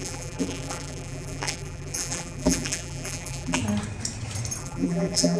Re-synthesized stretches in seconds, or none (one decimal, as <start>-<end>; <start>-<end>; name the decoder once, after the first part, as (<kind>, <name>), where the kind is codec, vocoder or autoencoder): 0.0-3.6 (vocoder, BigVGAN v2); 4.6-5.4